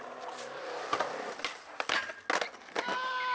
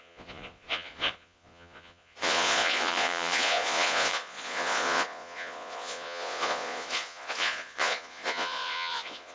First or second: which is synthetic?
second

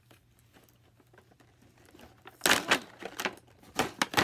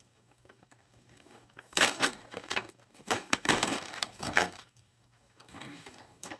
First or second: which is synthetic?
second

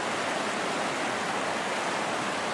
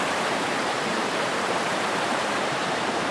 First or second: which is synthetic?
second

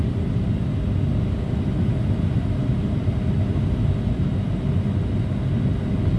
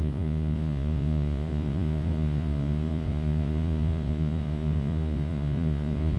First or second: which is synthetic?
second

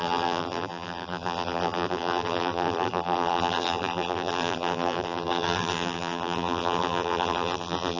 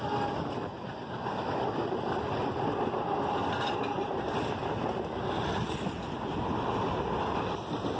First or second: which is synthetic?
first